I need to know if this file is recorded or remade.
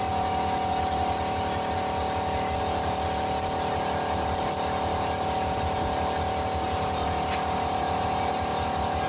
recorded